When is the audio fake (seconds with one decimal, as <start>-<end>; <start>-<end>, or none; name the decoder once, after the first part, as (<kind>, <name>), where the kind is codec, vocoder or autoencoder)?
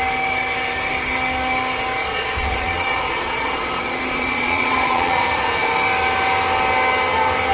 2.0-5.2 (vocoder, Vocos)